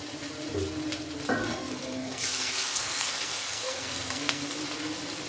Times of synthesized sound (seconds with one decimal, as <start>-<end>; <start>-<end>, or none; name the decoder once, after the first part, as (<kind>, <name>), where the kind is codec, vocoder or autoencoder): 1.4-4.6 (codec, SNAC)